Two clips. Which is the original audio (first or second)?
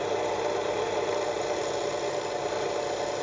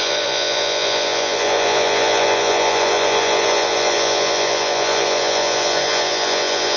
first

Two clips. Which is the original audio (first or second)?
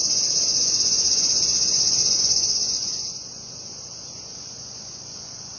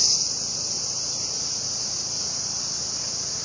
second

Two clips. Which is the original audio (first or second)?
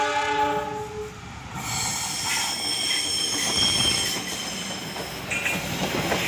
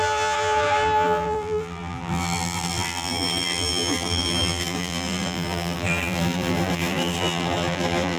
first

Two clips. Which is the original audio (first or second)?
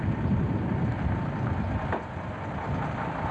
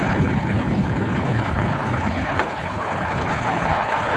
first